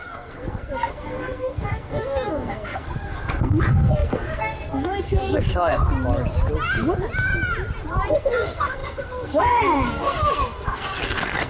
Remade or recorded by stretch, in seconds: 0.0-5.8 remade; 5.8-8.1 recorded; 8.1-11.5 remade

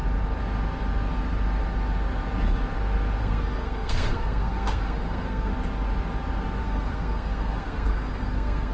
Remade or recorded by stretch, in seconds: 0.0-3.2 recorded; 3.2-5.5 remade; 5.5-6.6 recorded; 6.6-8.7 remade